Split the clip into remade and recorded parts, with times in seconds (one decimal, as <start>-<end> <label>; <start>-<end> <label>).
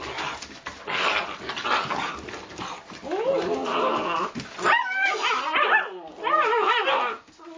0.0-7.6 recorded